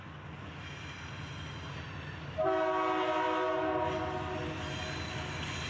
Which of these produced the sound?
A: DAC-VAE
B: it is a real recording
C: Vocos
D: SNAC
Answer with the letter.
B